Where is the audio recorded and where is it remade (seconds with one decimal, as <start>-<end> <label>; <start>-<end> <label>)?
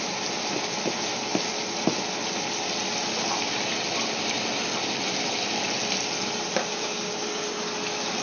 0.0-6.7 recorded; 6.7-7.4 remade; 7.4-8.2 recorded